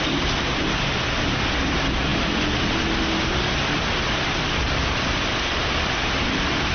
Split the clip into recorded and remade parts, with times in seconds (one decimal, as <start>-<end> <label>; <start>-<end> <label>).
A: 0.0-6.7 recorded